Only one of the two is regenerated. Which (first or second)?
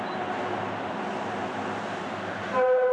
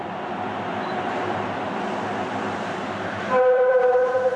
second